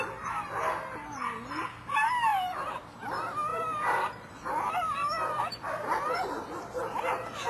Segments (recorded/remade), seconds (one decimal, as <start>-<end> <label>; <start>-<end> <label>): 0.0-3.5 recorded; 3.5-4.5 remade; 4.5-5.0 recorded; 5.0-7.5 remade